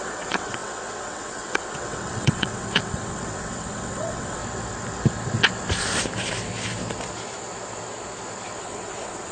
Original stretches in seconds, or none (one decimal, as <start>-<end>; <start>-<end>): 4.4-8.6